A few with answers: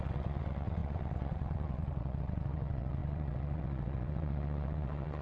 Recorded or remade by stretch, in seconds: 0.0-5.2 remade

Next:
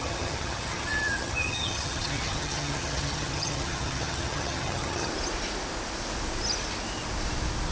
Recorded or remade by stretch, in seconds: 0.0-5.1 remade; 5.1-7.7 recorded

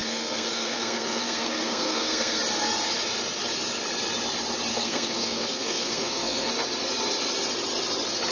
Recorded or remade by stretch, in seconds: 0.0-2.4 remade; 2.4-4.7 recorded; 4.7-6.5 remade; 6.5-8.3 recorded

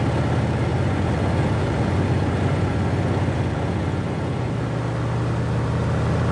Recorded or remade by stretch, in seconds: 0.0-0.7 recorded; 0.7-4.5 remade; 4.5-6.3 recorded

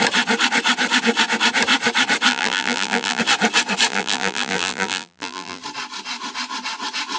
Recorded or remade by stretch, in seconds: 0.0-2.3 recorded; 2.3-3.2 remade; 3.2-3.9 recorded; 3.9-5.6 remade; 5.6-7.2 recorded

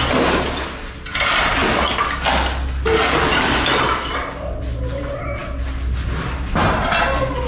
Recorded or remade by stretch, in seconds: 0.0-7.5 recorded

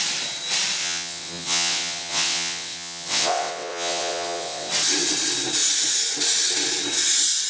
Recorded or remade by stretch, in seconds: 0.0-0.8 recorded; 0.8-4.7 remade; 4.7-7.5 recorded

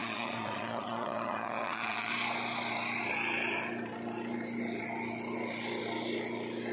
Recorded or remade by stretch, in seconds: 0.0-2.1 remade; 2.1-6.7 recorded